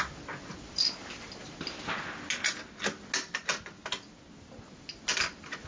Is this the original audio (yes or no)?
yes